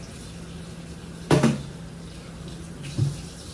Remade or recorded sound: recorded